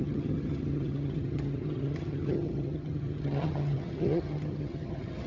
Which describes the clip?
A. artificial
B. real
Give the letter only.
A